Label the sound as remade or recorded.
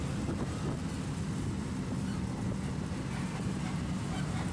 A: recorded